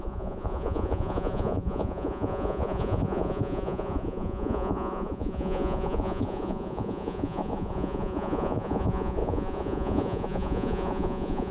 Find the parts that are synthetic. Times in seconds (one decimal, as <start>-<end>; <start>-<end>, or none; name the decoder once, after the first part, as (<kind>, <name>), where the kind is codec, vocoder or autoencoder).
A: 0.0-11.5 (vocoder, Vocos)